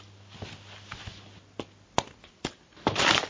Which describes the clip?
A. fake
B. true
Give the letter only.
B